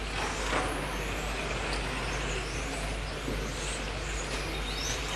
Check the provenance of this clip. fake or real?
real